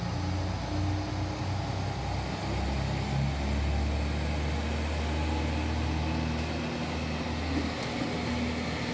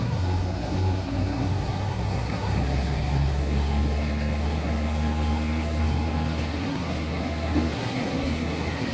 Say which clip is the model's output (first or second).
second